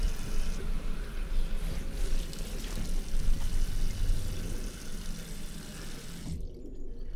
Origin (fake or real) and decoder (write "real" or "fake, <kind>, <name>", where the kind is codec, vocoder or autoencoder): real